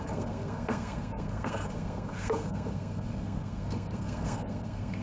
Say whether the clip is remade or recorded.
remade